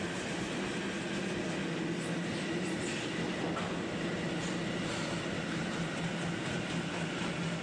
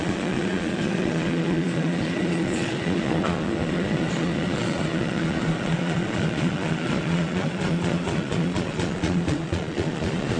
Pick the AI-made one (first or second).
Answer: second